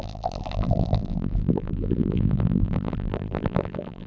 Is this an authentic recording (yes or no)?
no